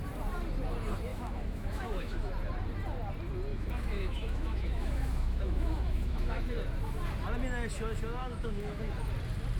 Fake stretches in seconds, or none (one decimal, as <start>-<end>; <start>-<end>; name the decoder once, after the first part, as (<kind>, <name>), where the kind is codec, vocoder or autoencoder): 1.1-2.3 (autoencoder, DAC-VAE); 3.5-6.4; 8.2-8.8

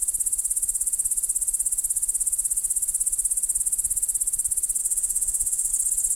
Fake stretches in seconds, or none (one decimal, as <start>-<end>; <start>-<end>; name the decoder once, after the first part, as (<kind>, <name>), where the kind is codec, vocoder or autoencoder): 4.8-5.7 (autoencoder, DAC-VAE)